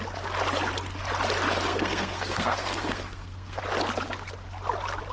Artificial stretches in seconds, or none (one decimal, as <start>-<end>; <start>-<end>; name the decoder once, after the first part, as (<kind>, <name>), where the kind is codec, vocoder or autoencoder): 1.7-3.6 (codec, SNAC)